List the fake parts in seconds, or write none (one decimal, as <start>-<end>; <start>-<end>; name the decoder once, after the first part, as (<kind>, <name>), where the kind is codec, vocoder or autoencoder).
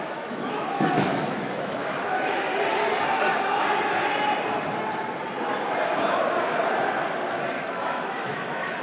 0.0-2.5 (autoencoder, DAC-VAE); 7.5-8.8